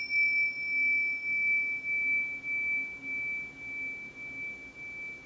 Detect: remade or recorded recorded